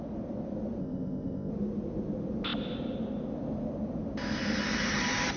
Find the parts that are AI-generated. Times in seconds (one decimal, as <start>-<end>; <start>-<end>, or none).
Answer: 0.8-1.5